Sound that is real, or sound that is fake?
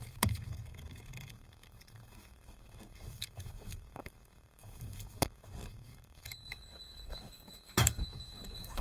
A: fake